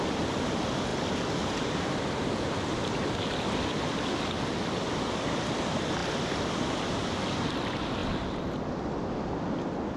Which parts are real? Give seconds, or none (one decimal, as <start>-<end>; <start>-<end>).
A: 0.0-10.0